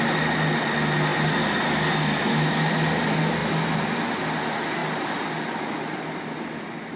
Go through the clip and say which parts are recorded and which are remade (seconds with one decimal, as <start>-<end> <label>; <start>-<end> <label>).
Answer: 0.0-7.0 recorded